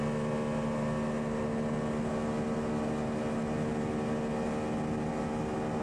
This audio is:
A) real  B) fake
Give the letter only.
A